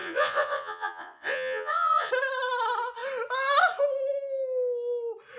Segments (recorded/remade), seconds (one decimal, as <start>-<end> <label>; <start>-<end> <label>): 0.0-2.1 remade; 2.1-5.4 recorded